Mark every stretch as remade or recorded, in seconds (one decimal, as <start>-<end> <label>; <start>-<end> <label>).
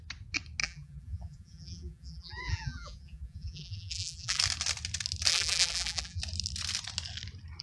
0.0-0.6 recorded; 0.6-4.4 remade; 4.4-5.3 recorded; 5.3-6.2 remade; 6.2-7.6 recorded